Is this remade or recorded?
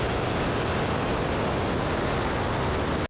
recorded